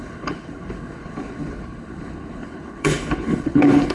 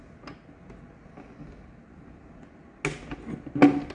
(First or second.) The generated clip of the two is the first